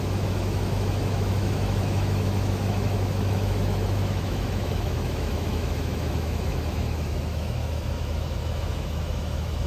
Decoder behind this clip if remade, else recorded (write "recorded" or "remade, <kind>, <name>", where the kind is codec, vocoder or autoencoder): remade, autoencoder, DAC-VAE